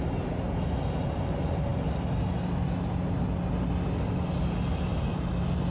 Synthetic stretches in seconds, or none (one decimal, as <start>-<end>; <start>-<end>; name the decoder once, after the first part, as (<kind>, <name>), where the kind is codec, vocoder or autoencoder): none

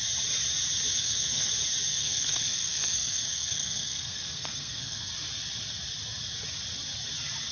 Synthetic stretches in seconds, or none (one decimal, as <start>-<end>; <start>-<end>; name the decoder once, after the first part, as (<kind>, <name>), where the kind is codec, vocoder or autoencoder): 0.9-1.5 (codec, SNAC); 1.9-5.1